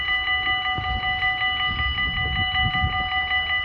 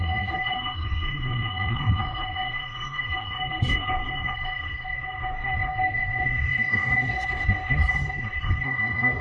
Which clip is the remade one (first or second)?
second